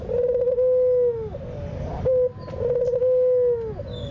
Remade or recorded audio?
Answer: recorded